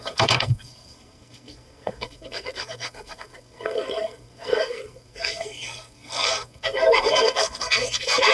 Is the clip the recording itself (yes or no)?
no